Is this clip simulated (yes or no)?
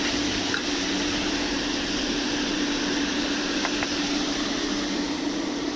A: yes